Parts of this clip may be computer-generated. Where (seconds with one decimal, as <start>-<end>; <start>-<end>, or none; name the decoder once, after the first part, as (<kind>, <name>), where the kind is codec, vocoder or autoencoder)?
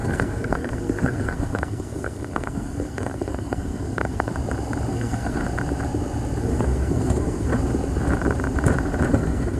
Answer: 0.0-4.3 (codec, SNAC); 4.9-5.4; 6.4-7.5; 9.1-9.6